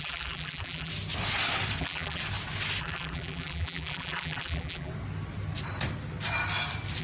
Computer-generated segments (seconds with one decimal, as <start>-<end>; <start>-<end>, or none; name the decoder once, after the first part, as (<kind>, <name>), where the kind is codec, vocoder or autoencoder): 0.0-0.9 (vocoder, BigVGAN v2); 1.8-2.2; 2.8-4.9